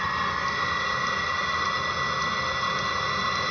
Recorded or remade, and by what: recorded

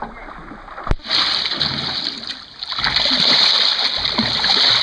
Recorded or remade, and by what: recorded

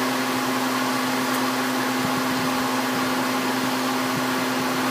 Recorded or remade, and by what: recorded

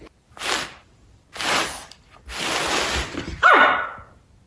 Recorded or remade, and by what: recorded